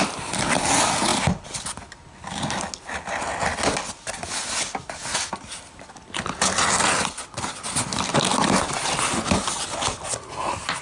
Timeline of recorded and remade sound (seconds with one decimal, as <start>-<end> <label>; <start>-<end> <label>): 0.0-10.8 recorded